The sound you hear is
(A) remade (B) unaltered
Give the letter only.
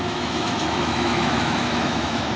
A